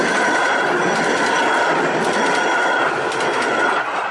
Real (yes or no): yes